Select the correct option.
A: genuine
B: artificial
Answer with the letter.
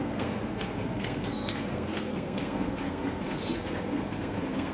B